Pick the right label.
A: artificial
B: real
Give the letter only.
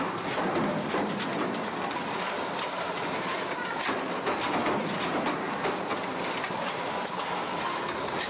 B